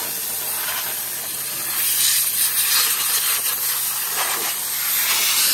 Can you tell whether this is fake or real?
real